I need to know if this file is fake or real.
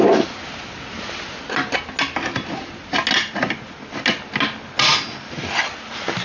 real